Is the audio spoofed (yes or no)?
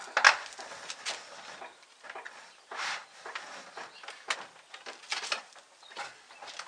no